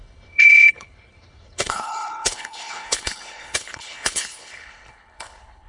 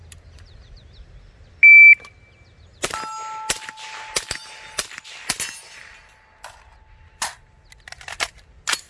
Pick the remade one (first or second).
first